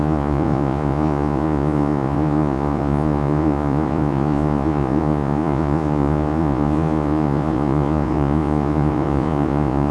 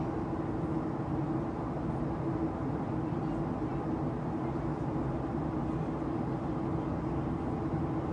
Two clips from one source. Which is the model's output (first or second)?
first